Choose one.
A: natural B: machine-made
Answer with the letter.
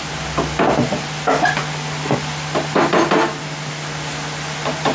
A